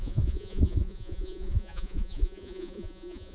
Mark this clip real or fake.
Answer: fake